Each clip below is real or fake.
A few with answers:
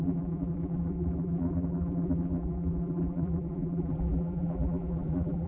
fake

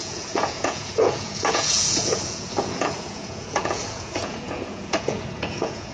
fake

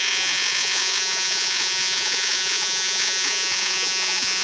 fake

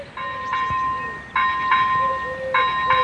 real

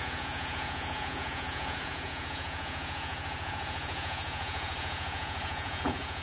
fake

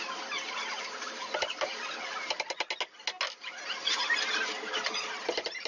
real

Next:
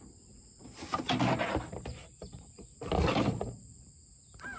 real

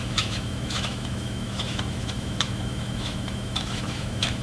fake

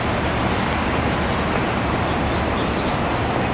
real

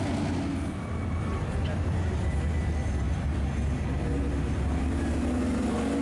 real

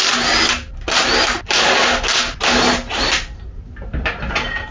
real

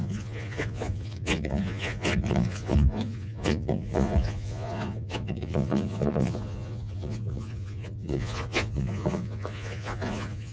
fake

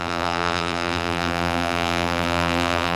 fake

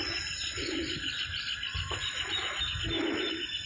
real